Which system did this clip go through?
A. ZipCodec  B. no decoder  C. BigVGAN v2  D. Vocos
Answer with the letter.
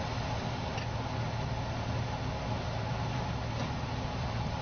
B